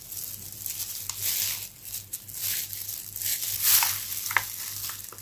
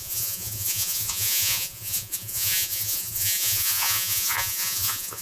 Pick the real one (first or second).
first